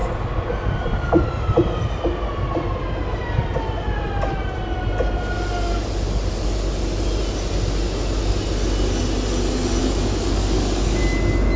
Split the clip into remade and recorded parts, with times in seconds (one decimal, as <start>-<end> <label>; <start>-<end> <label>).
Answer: 0.0-9.8 recorded; 9.8-11.0 remade; 11.0-11.6 recorded